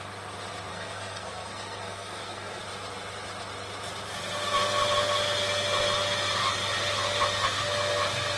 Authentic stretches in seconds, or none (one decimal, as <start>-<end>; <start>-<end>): 0.0-0.7; 2.6-8.4